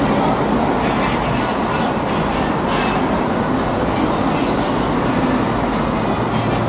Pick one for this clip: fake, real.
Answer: real